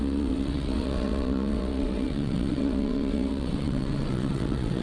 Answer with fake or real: fake